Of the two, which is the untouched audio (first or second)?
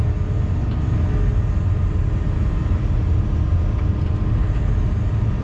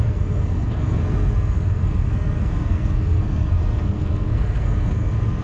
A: first